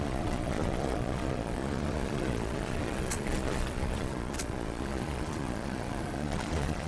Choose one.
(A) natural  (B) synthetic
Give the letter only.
B